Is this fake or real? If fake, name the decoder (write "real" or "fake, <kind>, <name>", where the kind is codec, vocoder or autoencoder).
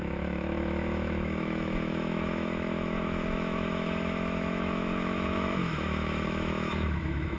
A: fake, autoencoder, DAC-VAE